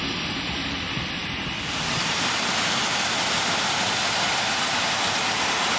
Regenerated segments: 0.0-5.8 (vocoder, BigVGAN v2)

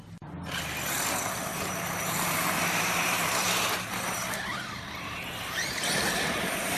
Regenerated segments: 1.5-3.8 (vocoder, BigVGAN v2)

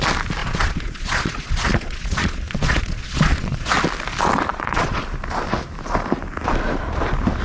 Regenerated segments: 0.4-3.7 (vocoder, Vocos); 4.5-5.0

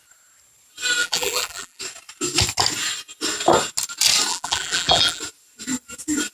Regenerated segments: 1.0-1.8 (vocoder, BigVGAN v2); 4.3-5.2

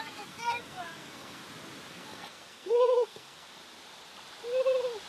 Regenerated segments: 0.0-1.4 (codec, SNAC); 1.9-3.6

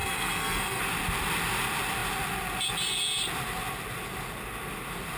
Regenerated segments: 0.0-0.8 (codec, SNAC)

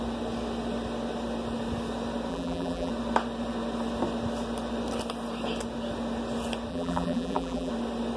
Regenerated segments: 2.3-2.9 (vocoder, BigVGAN v2); 6.7-7.7

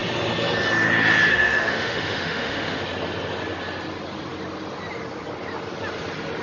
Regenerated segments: 1.3-2.8 (autoencoder, DAC-VAE)